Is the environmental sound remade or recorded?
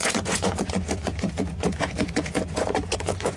remade